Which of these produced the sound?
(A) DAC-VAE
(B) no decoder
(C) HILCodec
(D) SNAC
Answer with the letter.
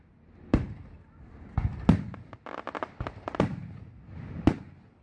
B